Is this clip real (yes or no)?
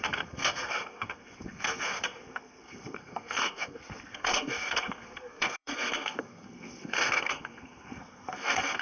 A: no